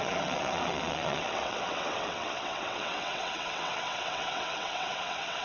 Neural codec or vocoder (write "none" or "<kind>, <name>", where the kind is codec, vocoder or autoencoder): vocoder, WaveNeXt